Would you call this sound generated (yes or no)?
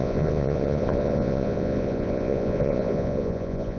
yes